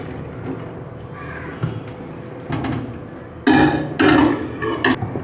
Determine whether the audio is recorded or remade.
recorded